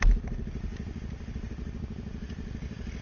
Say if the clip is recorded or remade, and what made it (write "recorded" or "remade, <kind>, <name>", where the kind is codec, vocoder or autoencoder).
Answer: recorded